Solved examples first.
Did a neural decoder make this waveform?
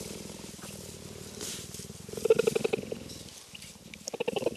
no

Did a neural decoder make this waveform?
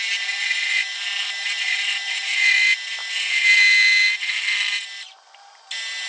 no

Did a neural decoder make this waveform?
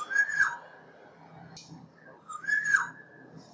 no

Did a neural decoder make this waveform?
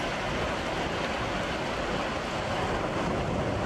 no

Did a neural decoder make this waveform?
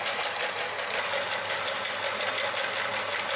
no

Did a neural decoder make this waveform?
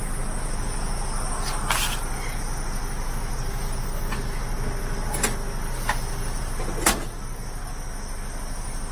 no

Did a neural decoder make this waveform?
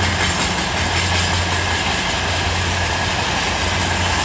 no